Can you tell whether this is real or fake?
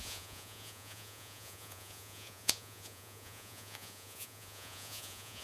fake